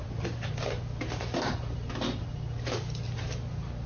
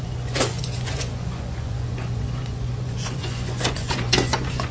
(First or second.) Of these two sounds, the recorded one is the first